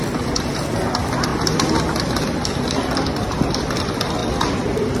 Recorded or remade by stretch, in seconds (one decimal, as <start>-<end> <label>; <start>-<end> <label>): 0.0-5.0 recorded